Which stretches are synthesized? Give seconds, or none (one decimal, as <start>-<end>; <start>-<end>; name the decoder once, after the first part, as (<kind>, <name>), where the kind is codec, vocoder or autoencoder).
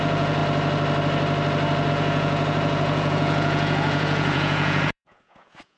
0.0-0.4 (vocoder, Vocos); 1.9-5.8